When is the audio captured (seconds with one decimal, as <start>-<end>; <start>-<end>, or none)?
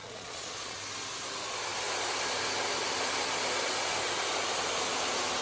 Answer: 0.8-5.4